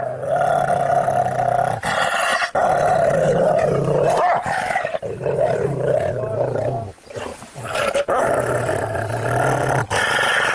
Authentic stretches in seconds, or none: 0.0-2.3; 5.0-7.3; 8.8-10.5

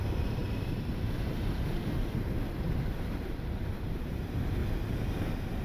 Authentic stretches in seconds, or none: 4.6-5.6

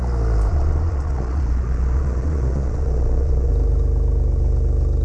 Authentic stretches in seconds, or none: 0.0-0.5; 3.5-5.0

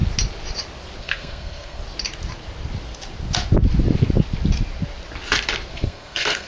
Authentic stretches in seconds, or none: 0.0-1.0; 1.8-5.7